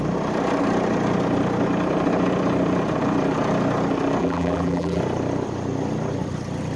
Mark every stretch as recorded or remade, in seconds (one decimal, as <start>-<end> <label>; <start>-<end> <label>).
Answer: 0.0-4.2 recorded; 4.2-5.0 remade; 5.0-6.8 recorded